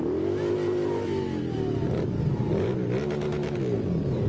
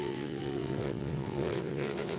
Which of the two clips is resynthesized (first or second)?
second